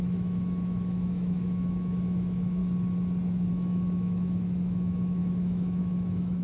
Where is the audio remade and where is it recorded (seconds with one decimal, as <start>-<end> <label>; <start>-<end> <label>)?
0.0-2.6 remade; 2.6-3.5 recorded; 3.5-6.4 remade